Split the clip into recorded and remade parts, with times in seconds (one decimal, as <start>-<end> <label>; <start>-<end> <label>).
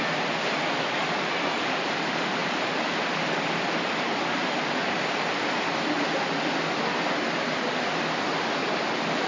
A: 0.0-9.3 recorded